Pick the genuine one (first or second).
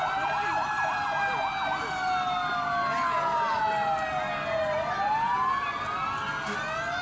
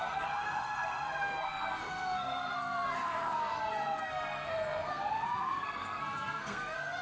first